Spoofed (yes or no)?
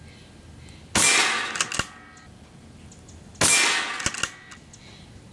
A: no